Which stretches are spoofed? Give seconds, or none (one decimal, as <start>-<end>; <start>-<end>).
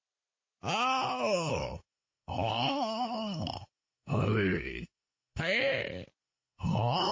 1.5-5.4; 6.2-7.1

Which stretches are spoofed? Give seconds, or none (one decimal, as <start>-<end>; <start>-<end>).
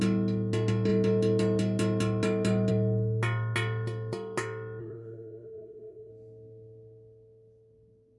4.8-6.1